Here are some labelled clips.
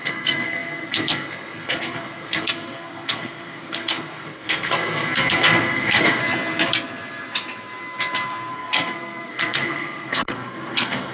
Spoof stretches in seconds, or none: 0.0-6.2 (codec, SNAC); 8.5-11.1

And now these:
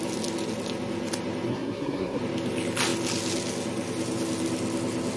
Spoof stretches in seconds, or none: 1.5-2.2 (codec, SNAC)

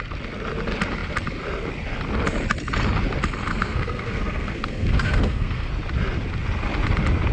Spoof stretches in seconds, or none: 3.5-5.7 (codec, SNAC)

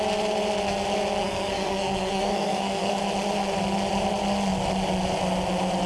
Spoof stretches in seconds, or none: 1.2-3.0 (codec, SNAC)

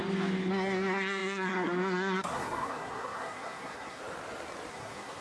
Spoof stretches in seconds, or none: 0.5-4.0 (codec, SNAC); 4.7-5.2

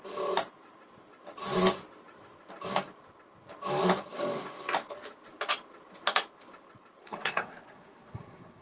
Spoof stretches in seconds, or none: 7.0-8.6 (codec, SNAC)

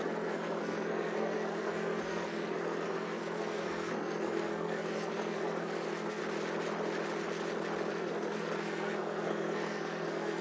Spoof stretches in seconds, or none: 0.0-6.2 (codec, SNAC); 7.9-10.4

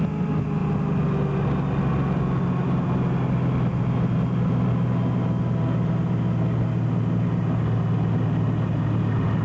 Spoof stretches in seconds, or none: none